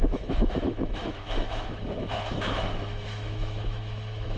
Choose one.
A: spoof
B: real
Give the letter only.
A